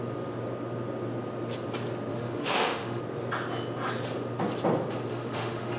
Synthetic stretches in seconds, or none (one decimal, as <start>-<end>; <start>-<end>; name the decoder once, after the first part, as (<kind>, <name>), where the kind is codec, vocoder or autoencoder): 2.1-3.0 (autoencoder, DAC-VAE); 5.1-5.8